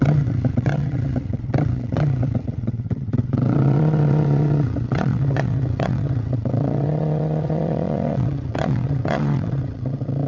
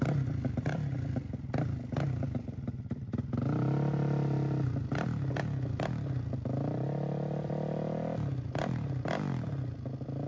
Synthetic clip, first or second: first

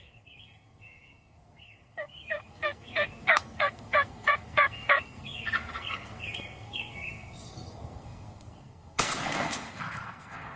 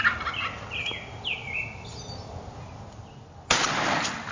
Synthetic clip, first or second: first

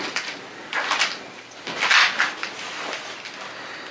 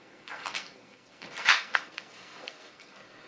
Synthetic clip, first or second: second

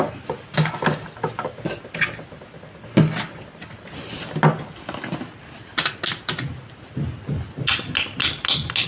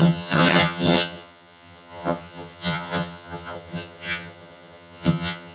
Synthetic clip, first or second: second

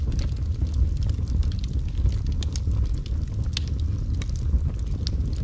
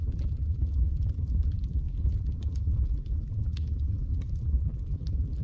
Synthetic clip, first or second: second